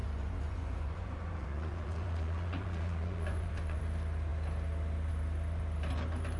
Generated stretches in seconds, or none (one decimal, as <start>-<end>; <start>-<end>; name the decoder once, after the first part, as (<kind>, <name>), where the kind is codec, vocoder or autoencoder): 0.0-3.8 (vocoder, Vocos)